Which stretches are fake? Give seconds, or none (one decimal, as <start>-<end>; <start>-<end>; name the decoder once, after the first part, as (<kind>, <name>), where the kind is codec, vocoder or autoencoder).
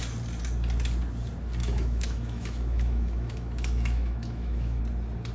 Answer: 1.6-4.8 (autoencoder, DAC-VAE)